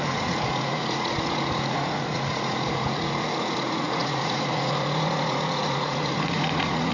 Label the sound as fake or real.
fake